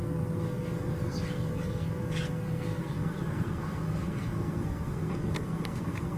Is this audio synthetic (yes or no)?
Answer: yes